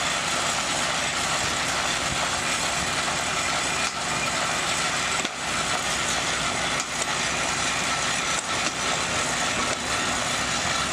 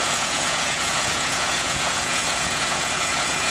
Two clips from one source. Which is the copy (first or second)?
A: second